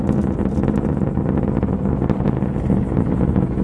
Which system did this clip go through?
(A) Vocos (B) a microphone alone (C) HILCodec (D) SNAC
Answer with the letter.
B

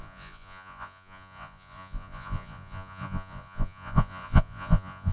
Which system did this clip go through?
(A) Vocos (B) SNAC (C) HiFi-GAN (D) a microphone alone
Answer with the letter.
A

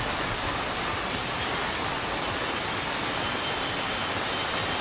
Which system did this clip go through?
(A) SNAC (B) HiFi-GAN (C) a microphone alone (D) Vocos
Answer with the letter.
C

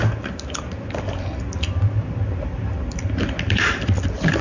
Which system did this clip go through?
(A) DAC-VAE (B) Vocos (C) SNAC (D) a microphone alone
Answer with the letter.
D